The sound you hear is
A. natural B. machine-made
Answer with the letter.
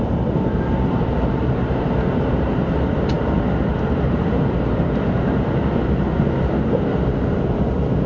B